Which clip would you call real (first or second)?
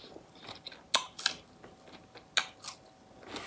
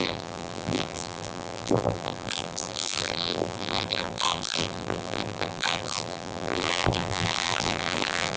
first